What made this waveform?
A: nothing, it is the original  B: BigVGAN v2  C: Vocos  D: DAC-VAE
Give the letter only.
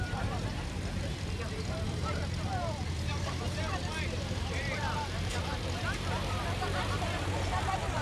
B